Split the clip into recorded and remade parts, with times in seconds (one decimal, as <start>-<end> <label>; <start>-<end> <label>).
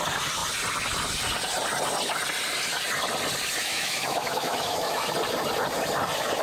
0.0-3.6 recorded; 3.6-5.1 remade; 5.1-6.4 recorded